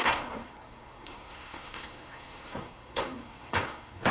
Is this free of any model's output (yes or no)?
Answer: no